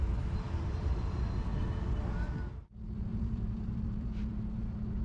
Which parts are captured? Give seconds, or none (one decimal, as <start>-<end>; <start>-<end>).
0.0-0.6; 1.5-3.0